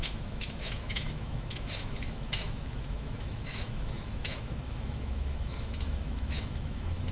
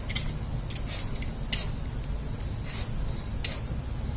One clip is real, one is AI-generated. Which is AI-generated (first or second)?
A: first